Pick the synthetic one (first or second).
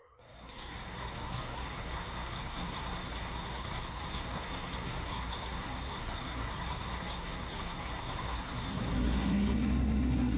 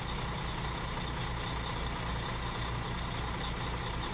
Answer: first